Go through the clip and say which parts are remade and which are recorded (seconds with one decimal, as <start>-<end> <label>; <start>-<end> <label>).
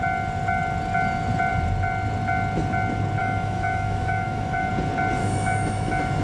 0.0-3.2 recorded; 3.2-4.7 remade; 4.7-5.2 recorded; 5.2-6.2 remade